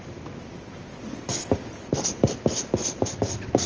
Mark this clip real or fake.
real